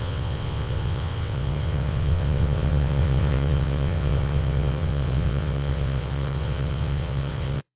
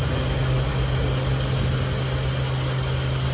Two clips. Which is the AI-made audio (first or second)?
first